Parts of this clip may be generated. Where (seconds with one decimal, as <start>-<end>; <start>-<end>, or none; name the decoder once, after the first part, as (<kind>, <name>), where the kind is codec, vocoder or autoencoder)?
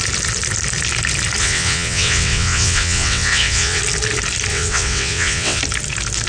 1.4-3.8 (vocoder, WaveNeXt); 4.5-5.6